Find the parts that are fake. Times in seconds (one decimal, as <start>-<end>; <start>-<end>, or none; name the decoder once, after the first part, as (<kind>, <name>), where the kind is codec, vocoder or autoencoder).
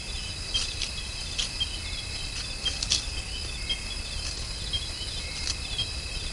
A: none